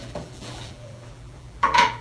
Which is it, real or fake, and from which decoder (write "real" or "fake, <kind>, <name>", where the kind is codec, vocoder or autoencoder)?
fake, vocoder, BigVGAN v2